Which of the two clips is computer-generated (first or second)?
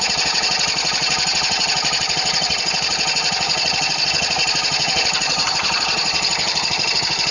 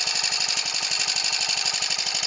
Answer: first